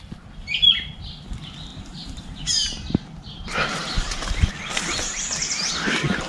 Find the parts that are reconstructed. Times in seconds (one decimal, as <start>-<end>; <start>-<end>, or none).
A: 1.7-4.5